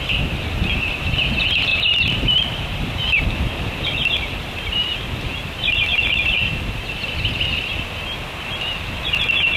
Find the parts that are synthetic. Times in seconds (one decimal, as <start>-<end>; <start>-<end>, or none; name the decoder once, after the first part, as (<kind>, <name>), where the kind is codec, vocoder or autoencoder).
1.7-6.8 (vocoder, BigVGAN v2)